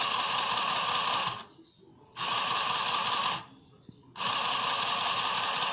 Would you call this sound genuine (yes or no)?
yes